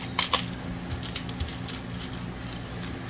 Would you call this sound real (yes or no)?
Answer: yes